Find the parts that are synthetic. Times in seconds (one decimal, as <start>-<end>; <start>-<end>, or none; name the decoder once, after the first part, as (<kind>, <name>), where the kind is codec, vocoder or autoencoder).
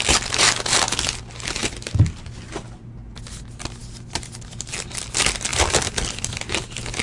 none